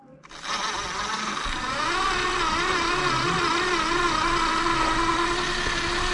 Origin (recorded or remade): recorded